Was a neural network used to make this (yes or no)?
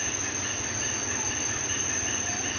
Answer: no